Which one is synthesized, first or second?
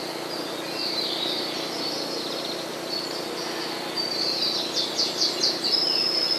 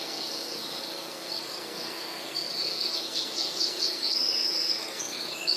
second